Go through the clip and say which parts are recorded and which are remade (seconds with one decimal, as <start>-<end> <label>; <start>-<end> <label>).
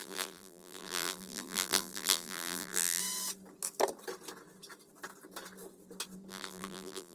0.0-3.0 remade; 3.0-6.3 recorded; 6.3-7.1 remade